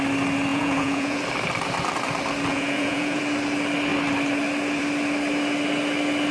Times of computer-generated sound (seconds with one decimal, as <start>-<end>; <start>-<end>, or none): 0.5-1.2; 2.5-3.2